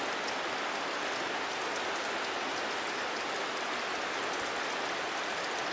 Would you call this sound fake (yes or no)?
no